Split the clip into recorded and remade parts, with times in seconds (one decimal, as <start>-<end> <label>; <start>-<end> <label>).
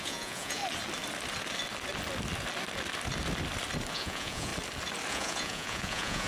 0.0-0.6 remade; 0.6-3.9 recorded; 3.9-4.5 remade; 4.5-5.1 recorded; 5.1-6.3 remade